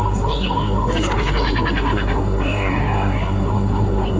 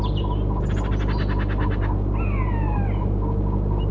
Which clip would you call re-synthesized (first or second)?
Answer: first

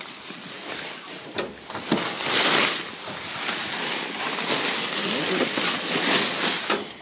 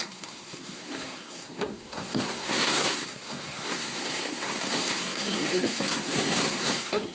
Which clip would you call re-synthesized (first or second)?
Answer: second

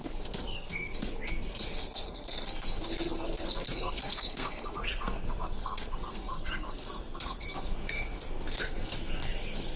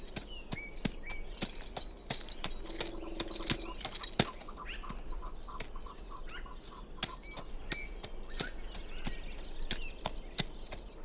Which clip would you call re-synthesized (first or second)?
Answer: first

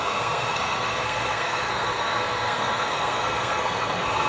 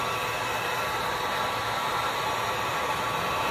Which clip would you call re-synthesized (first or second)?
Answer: first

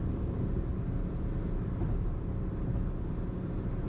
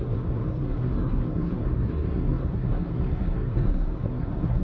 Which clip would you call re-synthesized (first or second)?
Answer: second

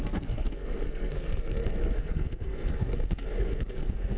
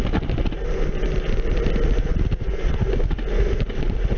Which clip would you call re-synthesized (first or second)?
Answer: first